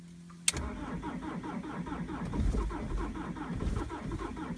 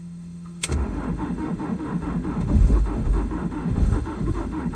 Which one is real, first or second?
first